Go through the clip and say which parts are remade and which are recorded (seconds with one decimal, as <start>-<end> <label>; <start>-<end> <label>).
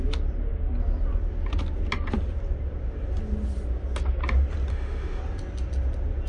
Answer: 0.0-4.7 recorded; 4.7-5.2 remade; 5.2-6.3 recorded